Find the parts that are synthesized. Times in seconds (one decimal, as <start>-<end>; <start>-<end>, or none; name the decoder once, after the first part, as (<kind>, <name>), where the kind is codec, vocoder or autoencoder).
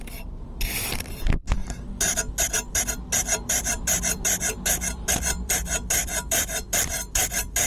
0.0-7.7 (vocoder, BigVGAN v2)